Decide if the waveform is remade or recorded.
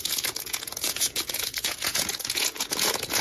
remade